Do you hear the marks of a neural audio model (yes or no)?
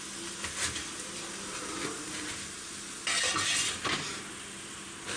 no